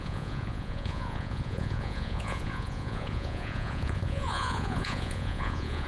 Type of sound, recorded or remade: remade